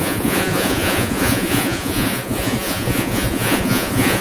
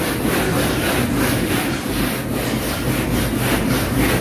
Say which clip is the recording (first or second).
second